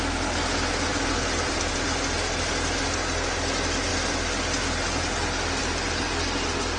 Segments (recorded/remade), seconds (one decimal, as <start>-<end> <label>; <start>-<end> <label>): 0.0-0.9 recorded; 0.9-1.7 remade; 1.7-6.8 recorded